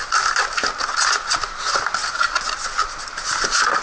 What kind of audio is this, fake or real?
real